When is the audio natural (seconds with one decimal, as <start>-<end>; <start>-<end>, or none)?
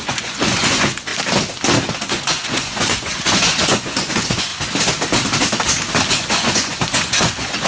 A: 1.1-2.0; 4.5-6.1